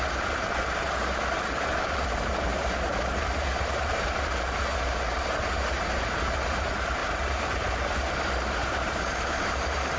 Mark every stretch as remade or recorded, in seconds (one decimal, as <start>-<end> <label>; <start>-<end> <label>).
0.0-2.5 recorded; 2.5-4.3 remade; 4.3-7.0 recorded; 7.0-8.1 remade; 8.1-8.6 recorded; 8.6-10.0 remade